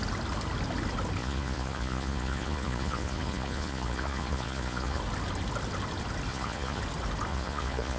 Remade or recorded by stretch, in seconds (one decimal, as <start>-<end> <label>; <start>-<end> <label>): 0.0-1.2 recorded; 1.2-5.0 remade; 5.0-6.3 recorded; 6.3-6.8 remade; 6.8-7.3 recorded; 7.3-8.0 remade